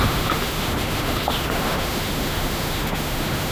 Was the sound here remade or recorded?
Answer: remade